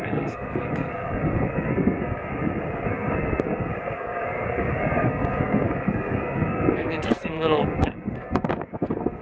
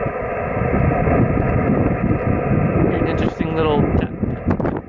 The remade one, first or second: first